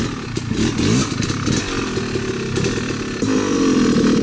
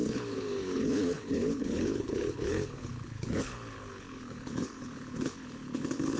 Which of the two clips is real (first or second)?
first